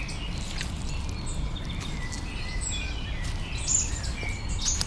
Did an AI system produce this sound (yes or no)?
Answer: no